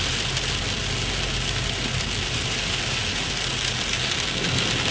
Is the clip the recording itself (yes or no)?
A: yes